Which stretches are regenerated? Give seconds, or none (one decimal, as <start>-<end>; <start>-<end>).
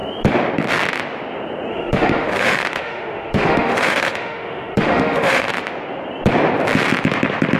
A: 1.7-5.5